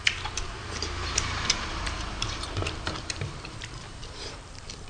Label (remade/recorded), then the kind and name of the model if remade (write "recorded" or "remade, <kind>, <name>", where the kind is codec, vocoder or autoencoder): remade, vocoder, BigVGAN v2